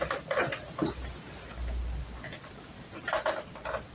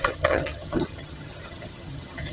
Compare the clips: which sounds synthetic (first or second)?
second